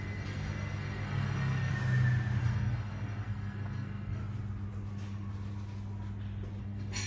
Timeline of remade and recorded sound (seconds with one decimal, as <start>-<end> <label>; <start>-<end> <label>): 0.0-1.7 remade; 1.7-2.4 recorded; 2.4-4.2 remade; 4.2-6.6 recorded; 6.6-7.1 remade